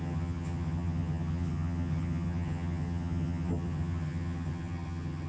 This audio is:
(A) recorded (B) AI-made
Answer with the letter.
B